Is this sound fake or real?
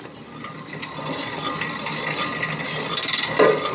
real